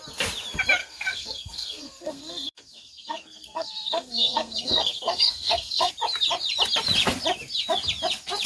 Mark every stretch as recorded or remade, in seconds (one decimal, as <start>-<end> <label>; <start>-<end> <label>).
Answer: 0.0-0.8 recorded; 0.8-5.9 remade; 5.9-8.5 recorded